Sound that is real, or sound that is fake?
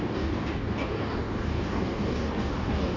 fake